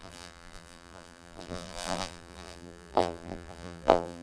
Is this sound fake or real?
fake